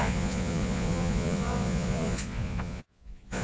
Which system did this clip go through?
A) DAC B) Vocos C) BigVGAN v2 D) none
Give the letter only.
B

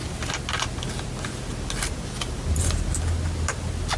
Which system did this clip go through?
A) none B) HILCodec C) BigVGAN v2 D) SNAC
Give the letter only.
A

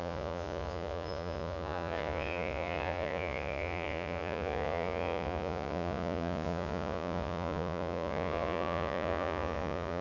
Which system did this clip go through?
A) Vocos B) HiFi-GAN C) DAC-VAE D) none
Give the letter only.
A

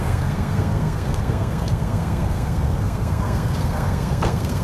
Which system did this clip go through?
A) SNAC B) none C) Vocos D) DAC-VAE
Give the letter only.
A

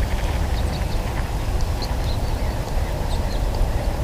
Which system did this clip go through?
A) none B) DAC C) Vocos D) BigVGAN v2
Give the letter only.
D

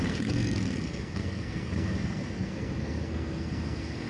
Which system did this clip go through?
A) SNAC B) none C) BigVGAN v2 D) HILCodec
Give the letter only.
A